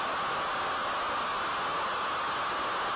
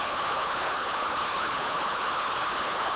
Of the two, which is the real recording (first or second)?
first